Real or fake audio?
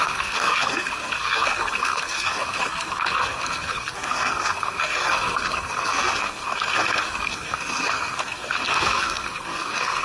fake